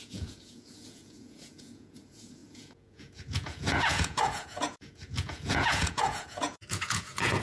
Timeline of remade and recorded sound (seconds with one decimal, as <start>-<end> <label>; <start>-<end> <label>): 0.0-7.4 remade